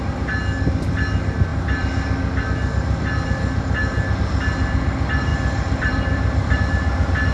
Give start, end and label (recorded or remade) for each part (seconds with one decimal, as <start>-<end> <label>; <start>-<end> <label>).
0.0-5.3 recorded; 5.3-6.6 remade; 6.6-7.3 recorded